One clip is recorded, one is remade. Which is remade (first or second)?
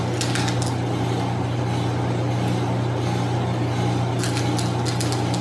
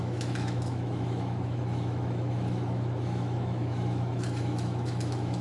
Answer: second